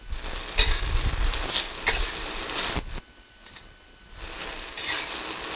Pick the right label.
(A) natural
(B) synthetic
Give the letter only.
A